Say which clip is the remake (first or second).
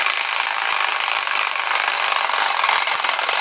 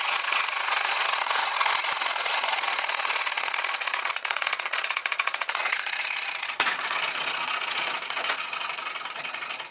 second